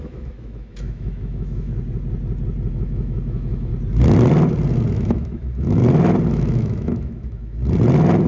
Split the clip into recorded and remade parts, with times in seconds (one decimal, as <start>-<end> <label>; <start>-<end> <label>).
0.0-1.7 remade; 1.7-2.7 recorded; 2.7-3.7 remade; 3.7-4.9 recorded; 4.9-5.8 remade; 5.8-6.3 recorded; 6.3-7.6 remade; 7.6-8.3 recorded